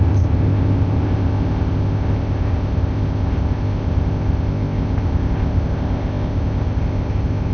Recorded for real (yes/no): no